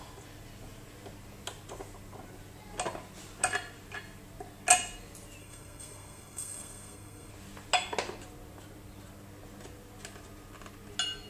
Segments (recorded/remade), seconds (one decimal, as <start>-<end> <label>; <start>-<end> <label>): 0.0-5.4 recorded; 5.4-7.3 remade; 7.3-11.3 recorded